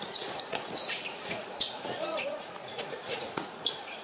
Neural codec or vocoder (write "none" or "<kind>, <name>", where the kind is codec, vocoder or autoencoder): vocoder, Vocos